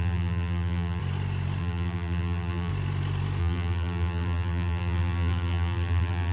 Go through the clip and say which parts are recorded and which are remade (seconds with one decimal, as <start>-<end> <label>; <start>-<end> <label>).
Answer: 0.0-1.0 remade; 1.0-1.6 recorded; 1.6-2.7 remade; 2.7-3.4 recorded; 3.4-6.3 remade